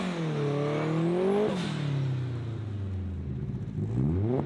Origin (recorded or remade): recorded